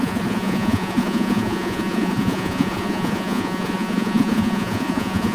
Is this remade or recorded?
remade